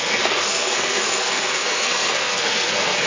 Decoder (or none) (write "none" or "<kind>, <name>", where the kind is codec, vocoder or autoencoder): codec, SNAC